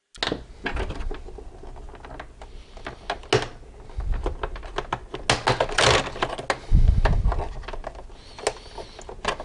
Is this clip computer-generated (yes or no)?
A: no